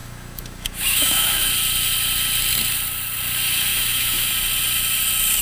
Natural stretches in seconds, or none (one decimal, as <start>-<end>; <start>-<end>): 1.5-3.7; 4.3-5.4